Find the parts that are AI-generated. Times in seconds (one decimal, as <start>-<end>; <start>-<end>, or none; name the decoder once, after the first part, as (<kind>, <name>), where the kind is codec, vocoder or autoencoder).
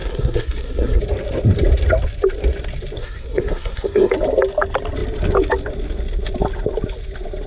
0.0-1.0 (codec, SNAC); 3.0-4.1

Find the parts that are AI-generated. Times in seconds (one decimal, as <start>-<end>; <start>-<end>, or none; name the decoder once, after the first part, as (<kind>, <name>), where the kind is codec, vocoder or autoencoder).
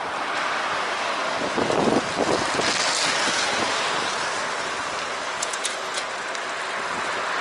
5.3-6.1 (vocoder, Vocos)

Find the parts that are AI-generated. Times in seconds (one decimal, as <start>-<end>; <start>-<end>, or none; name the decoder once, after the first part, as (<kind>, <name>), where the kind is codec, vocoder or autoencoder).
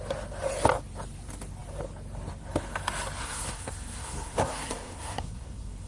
3.2-5.9 (codec, SNAC)